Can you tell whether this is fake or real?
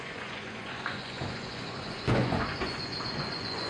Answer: fake